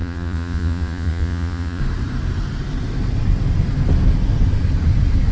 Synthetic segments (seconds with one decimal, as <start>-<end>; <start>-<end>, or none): 0.0-1.8